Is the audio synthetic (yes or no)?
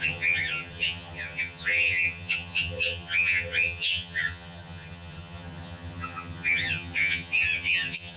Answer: yes